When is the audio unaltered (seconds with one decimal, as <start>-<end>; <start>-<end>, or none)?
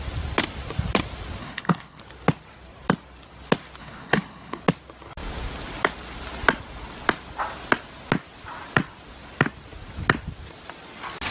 0.0-1.4; 2.0-3.8; 4.6-11.3